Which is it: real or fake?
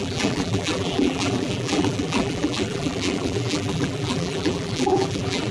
fake